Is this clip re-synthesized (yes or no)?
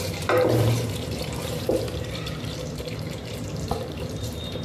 yes